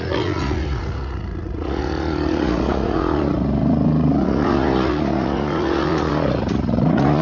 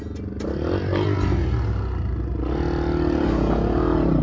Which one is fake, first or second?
first